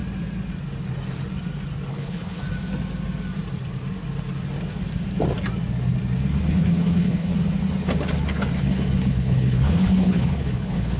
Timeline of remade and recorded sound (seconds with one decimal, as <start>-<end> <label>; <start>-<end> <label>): 0.0-1.9 recorded; 1.9-2.4 remade; 2.4-6.5 recorded; 6.5-7.3 remade; 7.3-8.6 recorded; 8.6-11.0 remade